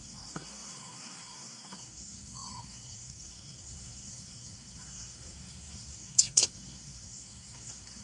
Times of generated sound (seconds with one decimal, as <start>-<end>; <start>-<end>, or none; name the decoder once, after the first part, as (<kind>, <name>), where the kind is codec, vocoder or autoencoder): 0.0-8.0 (codec, SNAC)